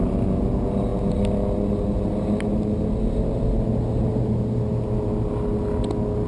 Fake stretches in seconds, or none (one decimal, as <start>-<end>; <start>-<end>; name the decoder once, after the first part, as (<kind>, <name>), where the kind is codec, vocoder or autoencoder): none